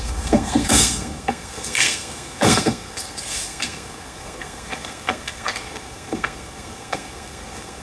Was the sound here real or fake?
fake